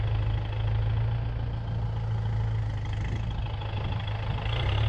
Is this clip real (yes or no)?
yes